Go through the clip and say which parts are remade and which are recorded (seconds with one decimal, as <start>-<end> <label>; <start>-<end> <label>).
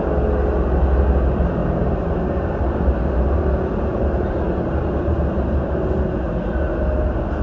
0.0-1.6 recorded; 1.6-6.0 remade; 6.0-7.4 recorded